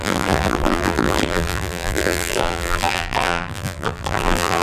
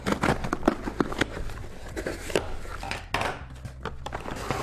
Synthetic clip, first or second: first